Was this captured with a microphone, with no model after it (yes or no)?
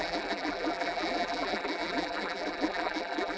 no